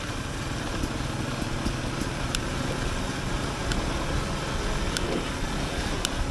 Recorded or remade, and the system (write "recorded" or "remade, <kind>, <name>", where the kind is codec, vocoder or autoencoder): recorded